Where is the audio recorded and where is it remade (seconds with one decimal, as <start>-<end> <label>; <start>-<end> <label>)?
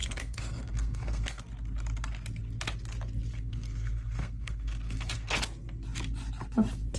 0.0-1.4 remade; 1.4-3.3 recorded; 3.3-5.3 remade; 5.3-7.0 recorded